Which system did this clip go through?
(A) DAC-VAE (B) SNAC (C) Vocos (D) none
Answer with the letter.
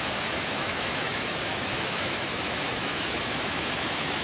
A